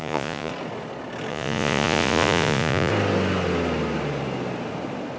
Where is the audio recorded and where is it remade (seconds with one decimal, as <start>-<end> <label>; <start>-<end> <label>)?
0.0-0.5 remade; 0.5-1.3 recorded; 1.3-2.9 remade; 2.9-5.2 recorded